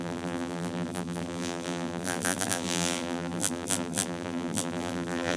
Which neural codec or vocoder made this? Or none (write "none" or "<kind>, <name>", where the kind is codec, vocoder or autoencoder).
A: vocoder, BigVGAN v2